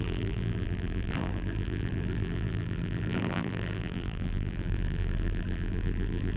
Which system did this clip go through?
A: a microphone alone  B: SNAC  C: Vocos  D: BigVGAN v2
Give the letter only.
D